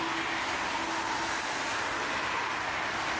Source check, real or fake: real